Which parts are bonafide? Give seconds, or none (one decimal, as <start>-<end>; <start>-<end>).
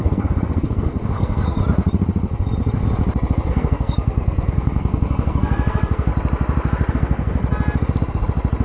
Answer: 1.6-3.5; 6.1-6.9; 7.4-8.6